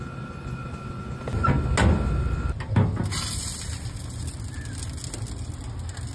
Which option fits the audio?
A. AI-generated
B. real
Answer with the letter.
B